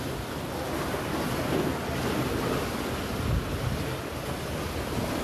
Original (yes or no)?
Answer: yes